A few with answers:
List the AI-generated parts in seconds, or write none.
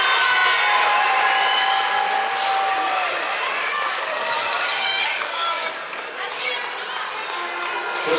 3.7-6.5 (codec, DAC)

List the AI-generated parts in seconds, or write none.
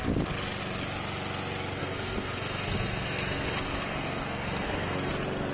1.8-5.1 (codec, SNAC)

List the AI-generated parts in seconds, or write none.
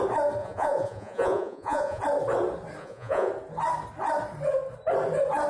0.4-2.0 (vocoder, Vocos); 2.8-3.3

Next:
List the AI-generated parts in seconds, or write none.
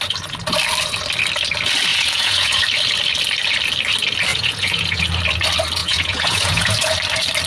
1.9-2.6 (vocoder, Vocos); 4.3-5.0; 5.8-6.7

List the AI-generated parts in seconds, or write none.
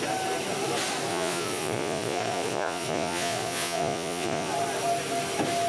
1.1-4.5 (vocoder, Vocos)